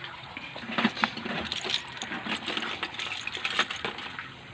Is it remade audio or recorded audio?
remade